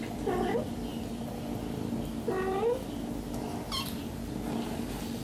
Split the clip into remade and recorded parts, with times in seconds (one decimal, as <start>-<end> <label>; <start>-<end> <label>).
0.0-5.2 recorded